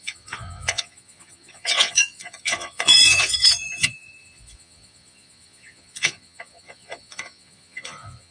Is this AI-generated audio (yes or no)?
yes